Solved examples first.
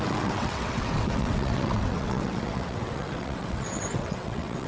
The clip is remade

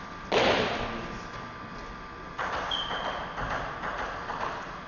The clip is recorded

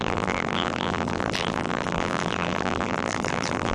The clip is remade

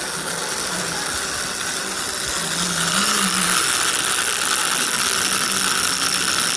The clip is recorded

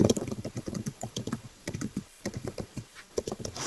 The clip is remade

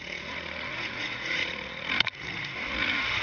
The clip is remade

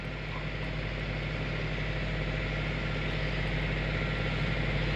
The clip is recorded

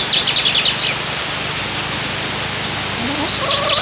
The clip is recorded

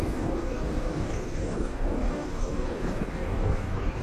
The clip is remade